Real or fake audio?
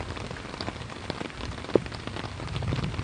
real